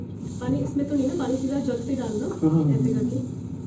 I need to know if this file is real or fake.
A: real